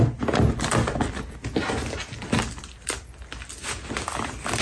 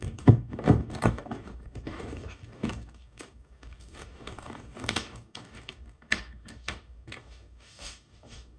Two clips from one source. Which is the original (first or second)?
first